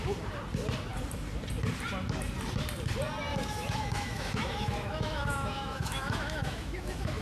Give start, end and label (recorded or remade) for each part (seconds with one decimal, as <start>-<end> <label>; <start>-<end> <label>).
0.0-3.3 recorded; 3.3-7.2 remade